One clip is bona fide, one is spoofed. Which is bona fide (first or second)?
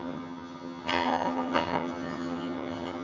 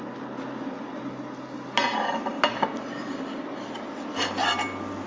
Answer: second